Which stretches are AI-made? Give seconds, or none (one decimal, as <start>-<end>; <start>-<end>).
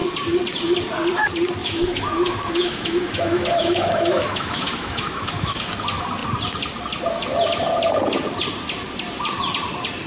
1.6-5.7